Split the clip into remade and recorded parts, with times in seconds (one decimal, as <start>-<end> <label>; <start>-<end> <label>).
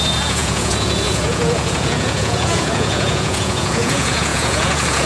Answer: 0.0-5.1 remade